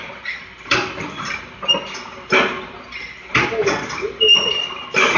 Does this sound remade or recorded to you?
recorded